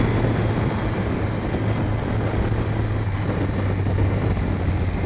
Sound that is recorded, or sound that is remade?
recorded